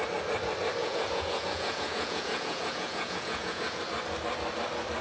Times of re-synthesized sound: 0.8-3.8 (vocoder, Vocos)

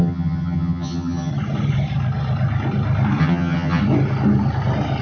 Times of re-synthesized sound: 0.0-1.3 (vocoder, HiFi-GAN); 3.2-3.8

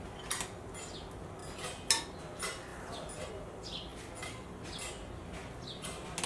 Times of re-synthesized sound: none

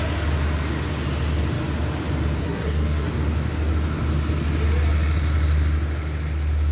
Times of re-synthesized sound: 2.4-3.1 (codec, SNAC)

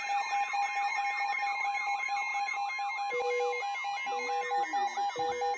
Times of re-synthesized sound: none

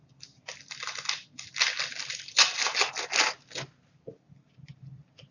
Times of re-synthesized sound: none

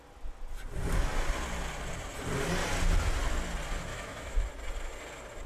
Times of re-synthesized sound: 3.9-4.4 (autoencoder, DAC-VAE)